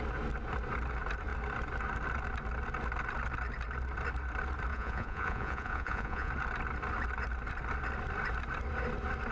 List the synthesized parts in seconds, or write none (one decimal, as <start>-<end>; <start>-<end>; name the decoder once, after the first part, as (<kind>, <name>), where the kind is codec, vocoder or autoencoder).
4.7-6.3 (vocoder, Vocos)